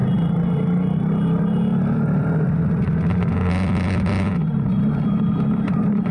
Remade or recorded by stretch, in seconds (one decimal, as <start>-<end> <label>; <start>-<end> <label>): 0.0-1.7 recorded; 1.7-3.3 remade; 3.3-4.3 recorded; 4.3-6.1 remade